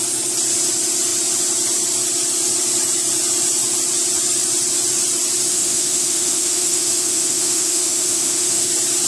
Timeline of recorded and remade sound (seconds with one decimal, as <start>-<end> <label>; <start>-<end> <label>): 0.0-5.5 recorded; 5.5-8.7 remade; 8.7-9.1 recorded